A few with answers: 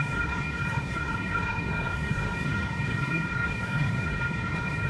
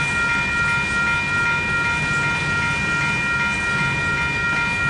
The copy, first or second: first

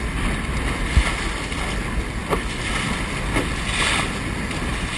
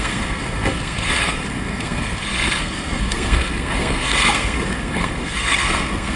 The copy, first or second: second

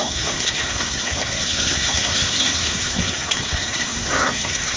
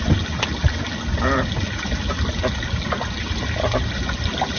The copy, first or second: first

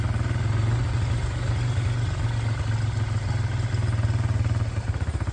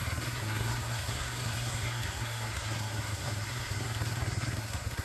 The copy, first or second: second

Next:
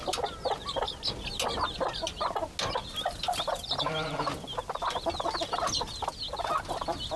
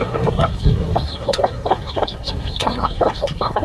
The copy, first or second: second